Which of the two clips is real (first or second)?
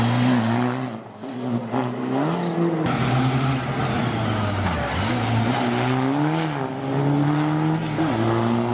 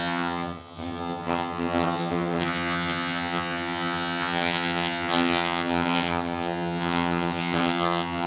first